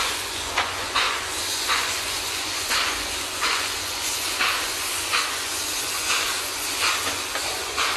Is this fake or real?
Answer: fake